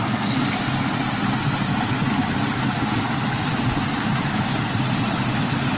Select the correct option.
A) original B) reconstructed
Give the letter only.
A